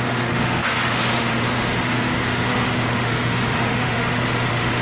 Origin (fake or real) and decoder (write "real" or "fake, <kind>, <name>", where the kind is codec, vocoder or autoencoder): fake, autoencoder, DAC-VAE